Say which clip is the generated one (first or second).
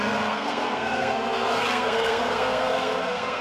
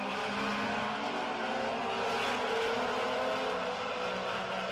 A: first